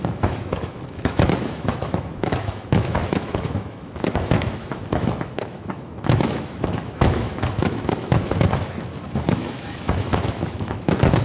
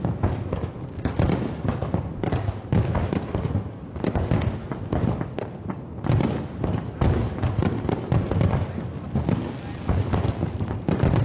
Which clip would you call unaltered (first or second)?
second